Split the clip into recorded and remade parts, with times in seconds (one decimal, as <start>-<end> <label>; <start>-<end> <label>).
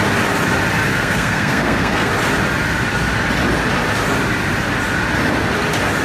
0.0-0.9 recorded; 0.9-2.1 remade; 2.1-6.0 recorded